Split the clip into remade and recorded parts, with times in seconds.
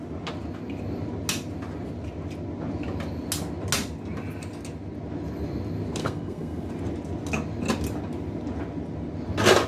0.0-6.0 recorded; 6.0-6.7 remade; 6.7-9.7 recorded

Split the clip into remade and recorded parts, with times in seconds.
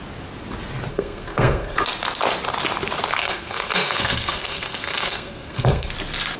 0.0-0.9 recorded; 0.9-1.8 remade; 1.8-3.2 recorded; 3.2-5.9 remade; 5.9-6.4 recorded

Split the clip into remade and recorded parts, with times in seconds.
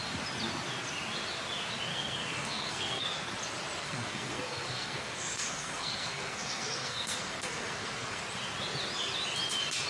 0.0-1.9 recorded; 1.9-3.3 remade; 3.3-3.8 recorded; 3.8-8.2 remade; 8.2-9.9 recorded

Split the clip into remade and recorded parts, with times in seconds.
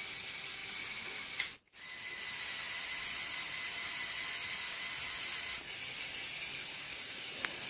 0.0-6.6 recorded; 6.6-7.3 remade; 7.3-7.7 recorded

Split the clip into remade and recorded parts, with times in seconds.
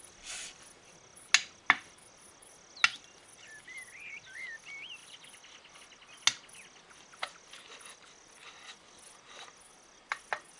0.0-10.6 recorded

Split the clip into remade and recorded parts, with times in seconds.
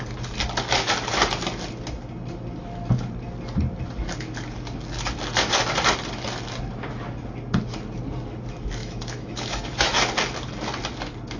0.0-8.8 recorded; 8.8-10.0 remade; 10.0-11.4 recorded